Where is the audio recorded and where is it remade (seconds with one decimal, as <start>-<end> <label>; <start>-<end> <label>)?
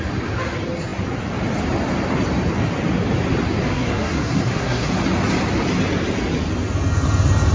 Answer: 0.0-3.7 recorded; 3.7-4.9 remade; 4.9-7.5 recorded